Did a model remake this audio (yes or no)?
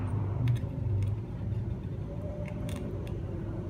yes